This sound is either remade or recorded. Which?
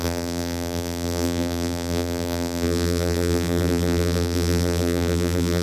remade